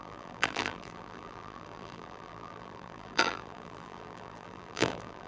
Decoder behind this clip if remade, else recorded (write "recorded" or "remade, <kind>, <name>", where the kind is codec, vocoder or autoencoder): remade, vocoder, BigVGAN v2